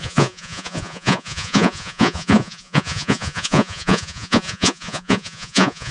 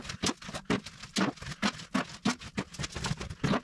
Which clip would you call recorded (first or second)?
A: second